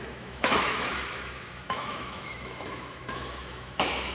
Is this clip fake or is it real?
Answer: fake